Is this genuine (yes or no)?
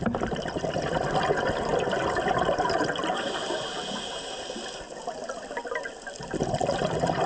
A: yes